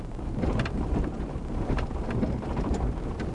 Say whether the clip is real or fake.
fake